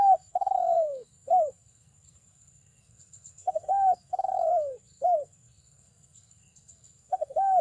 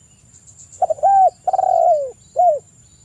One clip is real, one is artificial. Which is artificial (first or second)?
first